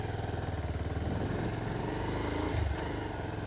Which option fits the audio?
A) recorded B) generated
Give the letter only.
A